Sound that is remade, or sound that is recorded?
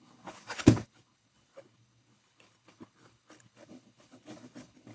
remade